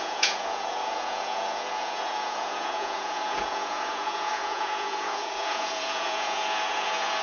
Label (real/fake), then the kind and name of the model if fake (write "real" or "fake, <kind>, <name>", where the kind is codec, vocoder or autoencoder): fake, vocoder, Vocos